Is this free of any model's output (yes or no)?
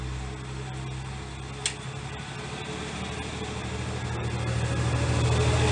yes